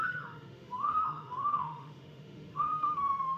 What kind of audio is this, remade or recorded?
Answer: remade